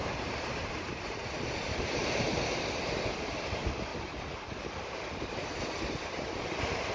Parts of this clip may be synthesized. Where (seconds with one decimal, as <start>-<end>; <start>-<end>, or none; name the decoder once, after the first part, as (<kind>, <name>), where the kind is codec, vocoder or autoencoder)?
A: 0.0-2.2 (vocoder, BigVGAN v2); 3.9-5.7